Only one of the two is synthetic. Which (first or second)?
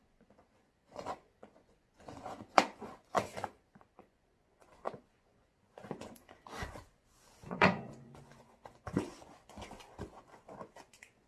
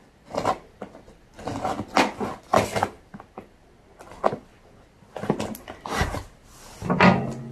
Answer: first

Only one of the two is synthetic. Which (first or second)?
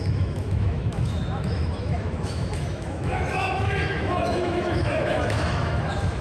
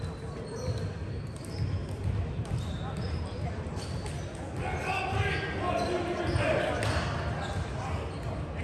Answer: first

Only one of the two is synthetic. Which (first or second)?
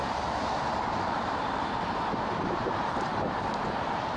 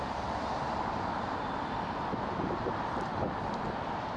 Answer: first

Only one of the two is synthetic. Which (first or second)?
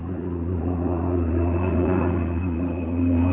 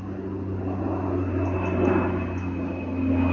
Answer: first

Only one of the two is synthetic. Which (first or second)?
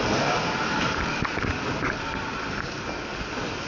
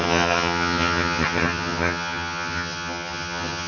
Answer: second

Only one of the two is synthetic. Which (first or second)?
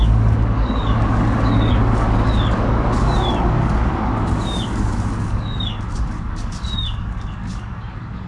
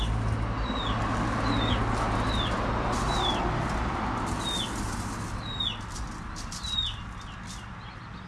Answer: first